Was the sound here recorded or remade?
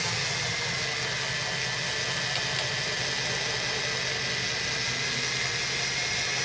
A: recorded